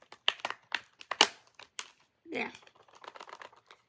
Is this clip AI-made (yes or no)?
no